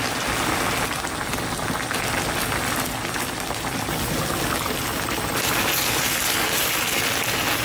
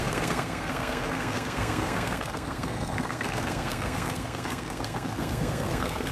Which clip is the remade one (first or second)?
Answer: second